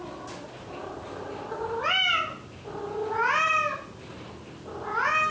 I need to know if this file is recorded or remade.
recorded